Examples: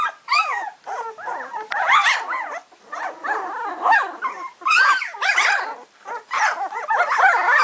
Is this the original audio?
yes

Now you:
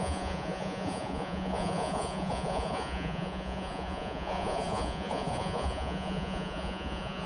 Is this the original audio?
no